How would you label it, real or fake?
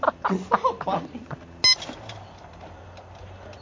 real